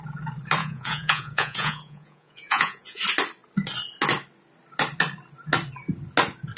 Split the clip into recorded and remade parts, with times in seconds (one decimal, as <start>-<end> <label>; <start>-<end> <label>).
0.0-0.6 recorded; 0.6-3.0 remade; 3.0-6.6 recorded